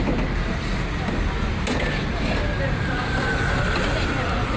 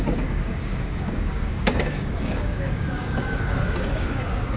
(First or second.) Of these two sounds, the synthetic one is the second